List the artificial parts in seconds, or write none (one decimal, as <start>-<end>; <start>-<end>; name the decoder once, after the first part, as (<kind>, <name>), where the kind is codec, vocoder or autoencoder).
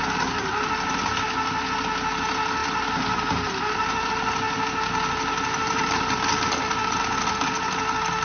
none